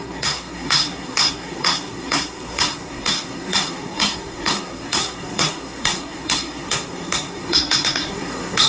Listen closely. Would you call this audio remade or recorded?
remade